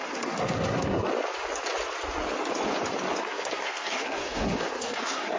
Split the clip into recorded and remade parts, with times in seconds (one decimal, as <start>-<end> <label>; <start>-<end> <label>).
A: 0.0-1.1 remade; 1.1-3.2 recorded; 3.2-5.4 remade